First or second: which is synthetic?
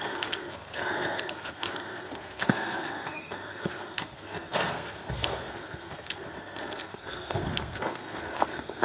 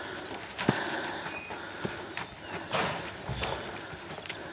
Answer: first